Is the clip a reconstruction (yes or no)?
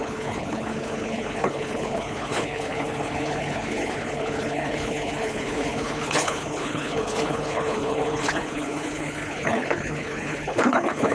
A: yes